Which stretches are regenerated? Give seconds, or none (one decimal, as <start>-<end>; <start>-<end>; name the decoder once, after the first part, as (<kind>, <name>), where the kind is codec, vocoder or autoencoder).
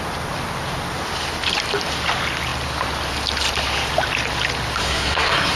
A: 4.8-5.6 (codec, SNAC)